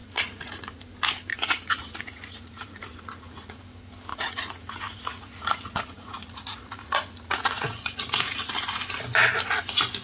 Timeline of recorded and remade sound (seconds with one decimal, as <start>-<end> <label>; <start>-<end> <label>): 0.0-0.8 remade; 0.8-1.3 recorded; 1.3-3.6 remade; 3.6-4.1 recorded; 4.1-8.5 remade; 8.5-10.0 recorded